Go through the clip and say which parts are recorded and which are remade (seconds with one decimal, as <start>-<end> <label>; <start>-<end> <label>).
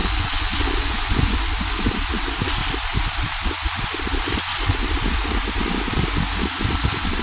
0.0-1.4 remade; 1.4-7.2 recorded